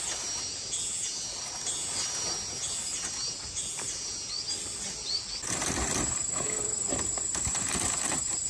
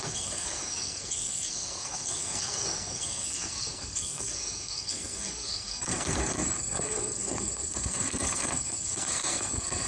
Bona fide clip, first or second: first